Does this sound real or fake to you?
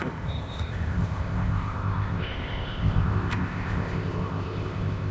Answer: fake